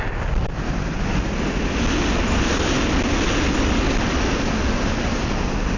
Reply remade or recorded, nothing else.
recorded